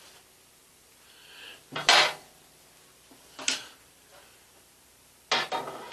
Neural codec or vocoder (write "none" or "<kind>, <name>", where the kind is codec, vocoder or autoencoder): none